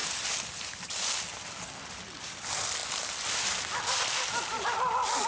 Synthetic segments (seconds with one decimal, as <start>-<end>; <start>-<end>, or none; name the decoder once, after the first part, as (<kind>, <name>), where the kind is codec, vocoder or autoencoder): none